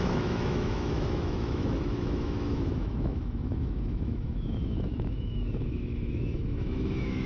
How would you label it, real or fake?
fake